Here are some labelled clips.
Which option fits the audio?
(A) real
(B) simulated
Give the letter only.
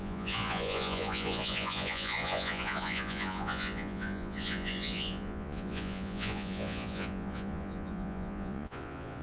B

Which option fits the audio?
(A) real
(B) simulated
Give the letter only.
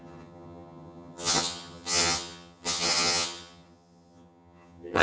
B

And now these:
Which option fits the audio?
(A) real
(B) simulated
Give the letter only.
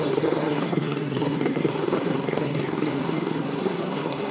B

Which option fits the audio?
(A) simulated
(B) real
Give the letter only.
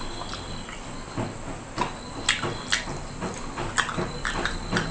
B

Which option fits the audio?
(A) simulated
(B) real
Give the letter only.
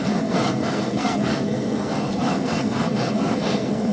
A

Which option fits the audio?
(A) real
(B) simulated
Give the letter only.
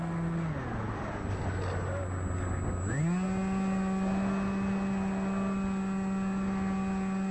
A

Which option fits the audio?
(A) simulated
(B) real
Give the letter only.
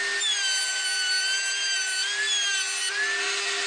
B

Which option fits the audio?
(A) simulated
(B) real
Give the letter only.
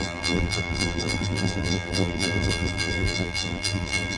A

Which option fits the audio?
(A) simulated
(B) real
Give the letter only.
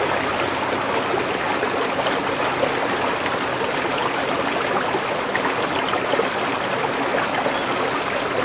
B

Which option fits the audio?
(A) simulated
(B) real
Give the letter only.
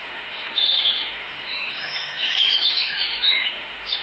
A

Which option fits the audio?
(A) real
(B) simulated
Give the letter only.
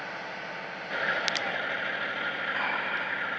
A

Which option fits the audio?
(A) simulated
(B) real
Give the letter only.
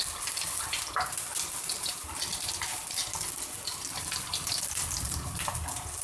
B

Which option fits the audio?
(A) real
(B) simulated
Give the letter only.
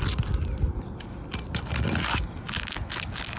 A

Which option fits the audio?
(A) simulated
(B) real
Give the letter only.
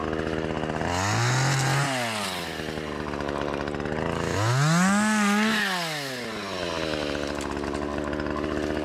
B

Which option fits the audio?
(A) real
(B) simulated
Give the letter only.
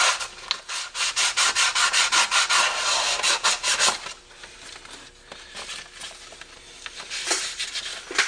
A